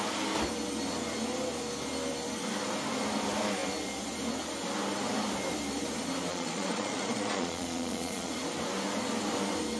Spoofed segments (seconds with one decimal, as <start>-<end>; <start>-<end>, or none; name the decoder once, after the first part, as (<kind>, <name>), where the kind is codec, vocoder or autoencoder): 6.3-8.3 (vocoder, Vocos)